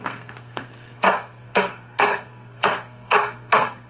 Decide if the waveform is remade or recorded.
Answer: remade